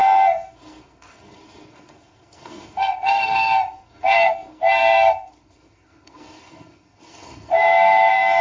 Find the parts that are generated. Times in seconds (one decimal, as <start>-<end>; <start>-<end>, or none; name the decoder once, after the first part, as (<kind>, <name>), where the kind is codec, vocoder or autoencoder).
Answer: 0.0-8.4 (codec, SNAC)